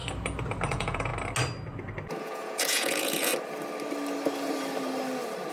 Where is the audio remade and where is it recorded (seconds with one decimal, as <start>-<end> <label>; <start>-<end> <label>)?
0.0-0.7 recorded; 0.7-1.1 remade; 1.1-2.2 recorded; 2.2-3.3 remade; 3.3-5.5 recorded